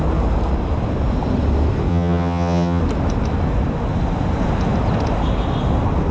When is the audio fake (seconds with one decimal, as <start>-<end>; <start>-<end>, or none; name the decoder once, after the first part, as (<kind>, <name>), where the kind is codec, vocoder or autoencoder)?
1.9-2.8 (vocoder, HiFi-GAN)